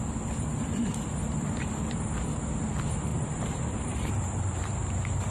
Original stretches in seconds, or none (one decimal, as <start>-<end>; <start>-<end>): 0.0-3.1; 4.7-5.3